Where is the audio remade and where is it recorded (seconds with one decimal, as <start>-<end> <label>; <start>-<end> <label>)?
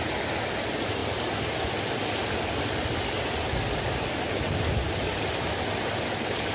0.0-6.5 recorded